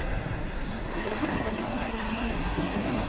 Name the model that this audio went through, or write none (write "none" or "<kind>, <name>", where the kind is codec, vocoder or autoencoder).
codec, SNAC